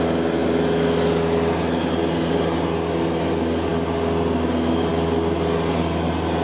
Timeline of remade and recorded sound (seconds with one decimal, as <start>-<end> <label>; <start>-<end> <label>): 0.0-6.4 recorded